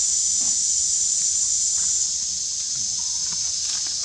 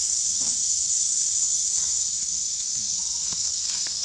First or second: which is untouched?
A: first